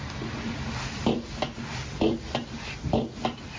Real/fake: real